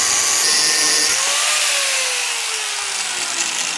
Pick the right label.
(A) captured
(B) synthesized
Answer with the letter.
A